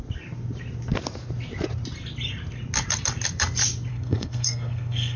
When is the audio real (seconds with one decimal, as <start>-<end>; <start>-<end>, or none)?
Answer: 0.0-3.9